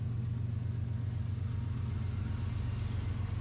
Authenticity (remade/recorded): recorded